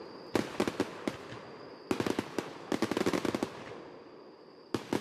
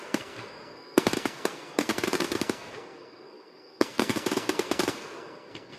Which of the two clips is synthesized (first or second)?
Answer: second